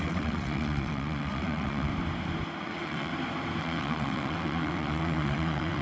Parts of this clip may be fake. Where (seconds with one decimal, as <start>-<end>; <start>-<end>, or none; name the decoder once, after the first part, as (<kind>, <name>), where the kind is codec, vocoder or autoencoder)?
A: 0.0-1.9 (vocoder, WaveNeXt); 2.6-3.1; 3.6-5.8